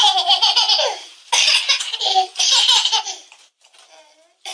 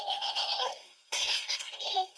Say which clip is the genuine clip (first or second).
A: first